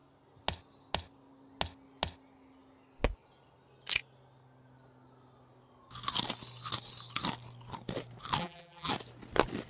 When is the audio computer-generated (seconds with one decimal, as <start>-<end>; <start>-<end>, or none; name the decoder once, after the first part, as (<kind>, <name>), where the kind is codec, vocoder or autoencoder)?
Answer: 8.4-8.9 (vocoder, BigVGAN v2)